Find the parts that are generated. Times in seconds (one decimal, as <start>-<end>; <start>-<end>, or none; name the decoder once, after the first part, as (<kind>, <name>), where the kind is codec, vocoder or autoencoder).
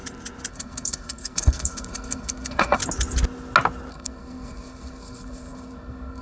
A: 0.5-2.8 (codec, SNAC); 3.9-6.2